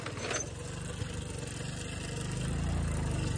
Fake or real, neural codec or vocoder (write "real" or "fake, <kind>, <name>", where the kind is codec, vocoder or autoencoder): real